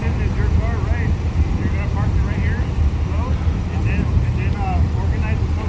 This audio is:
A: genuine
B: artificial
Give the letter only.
A